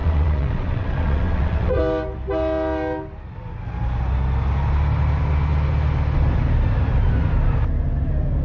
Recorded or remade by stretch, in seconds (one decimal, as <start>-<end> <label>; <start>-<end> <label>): 0.0-1.8 remade; 1.8-8.4 recorded